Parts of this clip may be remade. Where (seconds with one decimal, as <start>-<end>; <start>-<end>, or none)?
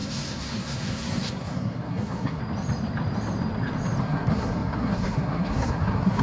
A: 0.0-2.4; 4.0-6.2